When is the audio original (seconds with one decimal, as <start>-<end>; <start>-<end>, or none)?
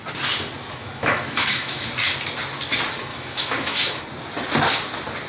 0.0-0.8; 1.9-3.1; 4.0-5.3